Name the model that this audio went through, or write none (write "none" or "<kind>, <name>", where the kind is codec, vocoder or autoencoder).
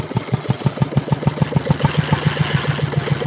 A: none